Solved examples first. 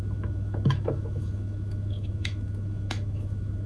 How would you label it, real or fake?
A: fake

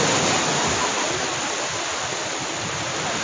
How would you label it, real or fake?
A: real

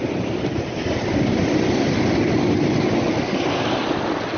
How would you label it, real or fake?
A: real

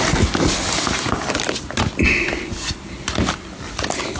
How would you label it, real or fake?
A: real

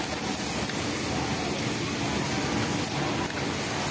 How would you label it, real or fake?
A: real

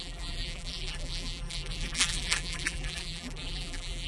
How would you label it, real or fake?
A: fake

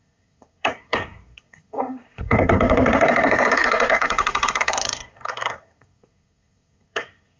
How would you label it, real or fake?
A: fake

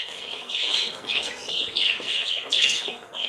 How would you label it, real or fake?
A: fake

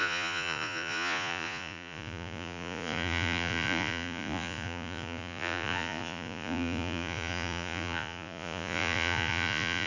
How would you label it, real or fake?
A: fake